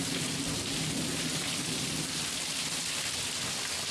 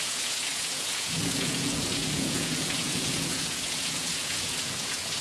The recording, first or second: first